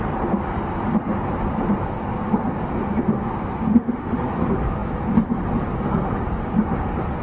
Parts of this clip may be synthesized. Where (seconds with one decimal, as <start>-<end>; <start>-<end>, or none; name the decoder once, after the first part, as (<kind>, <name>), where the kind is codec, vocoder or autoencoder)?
3.7-4.2 (autoencoder, DAC-VAE)